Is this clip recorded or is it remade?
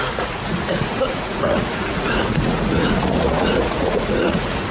remade